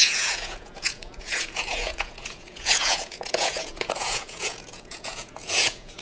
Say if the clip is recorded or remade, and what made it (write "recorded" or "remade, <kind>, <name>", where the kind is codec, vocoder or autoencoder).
remade, vocoder, Vocos